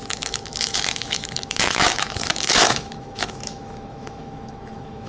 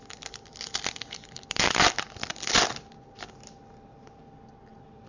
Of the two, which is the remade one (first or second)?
first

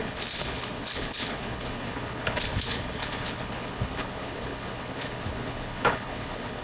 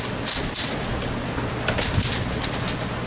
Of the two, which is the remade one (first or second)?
first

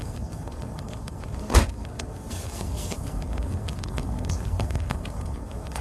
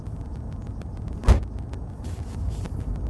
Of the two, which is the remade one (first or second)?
first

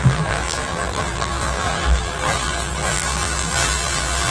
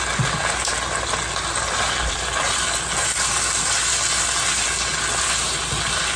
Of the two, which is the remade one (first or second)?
first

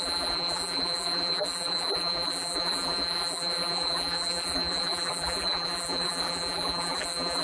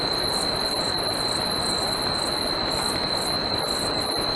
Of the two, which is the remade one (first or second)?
first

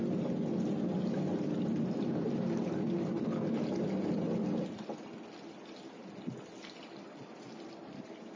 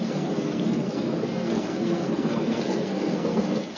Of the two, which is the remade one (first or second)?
second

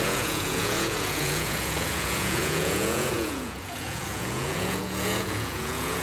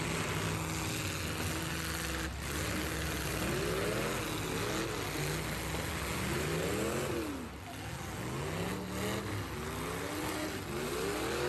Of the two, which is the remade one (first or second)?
first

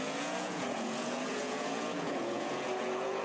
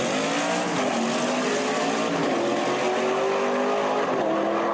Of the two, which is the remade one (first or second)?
first